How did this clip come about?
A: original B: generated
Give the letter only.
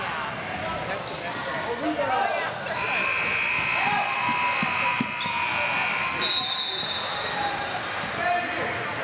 A